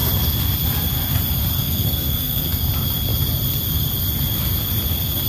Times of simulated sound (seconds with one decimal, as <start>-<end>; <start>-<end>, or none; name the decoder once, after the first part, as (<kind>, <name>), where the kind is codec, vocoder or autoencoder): 1.6-2.6 (codec, SNAC)